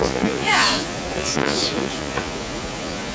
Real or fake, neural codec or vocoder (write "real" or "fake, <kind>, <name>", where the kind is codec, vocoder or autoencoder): fake, vocoder, Vocos